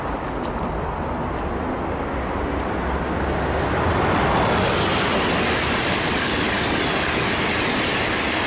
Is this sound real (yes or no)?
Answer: yes